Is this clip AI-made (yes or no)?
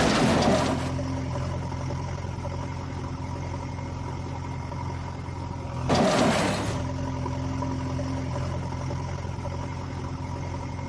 no